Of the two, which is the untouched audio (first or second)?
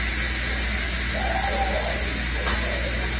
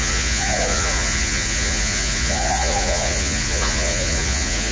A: first